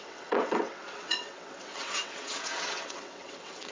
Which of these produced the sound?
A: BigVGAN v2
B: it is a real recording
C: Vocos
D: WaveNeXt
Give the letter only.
D